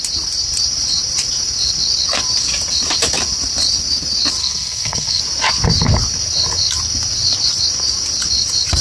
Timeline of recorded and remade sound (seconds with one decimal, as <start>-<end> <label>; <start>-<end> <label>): 0.0-4.4 recorded; 4.4-5.2 remade; 5.2-8.8 recorded